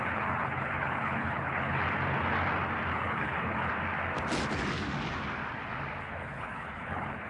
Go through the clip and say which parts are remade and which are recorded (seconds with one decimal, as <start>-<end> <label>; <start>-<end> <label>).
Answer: 0.0-1.8 remade; 1.8-2.9 recorded; 2.9-3.7 remade; 3.7-6.0 recorded; 6.0-7.3 remade

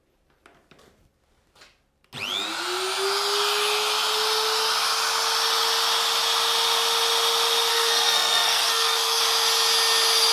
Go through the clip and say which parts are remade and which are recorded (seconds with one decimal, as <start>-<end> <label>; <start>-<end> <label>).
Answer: 0.0-7.7 recorded; 7.7-9.2 remade; 9.2-10.3 recorded

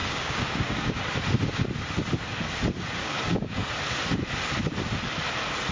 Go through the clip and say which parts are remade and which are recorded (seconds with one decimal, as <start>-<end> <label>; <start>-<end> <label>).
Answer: 0.0-1.1 remade; 1.1-3.0 recorded; 3.0-3.7 remade; 3.7-5.7 recorded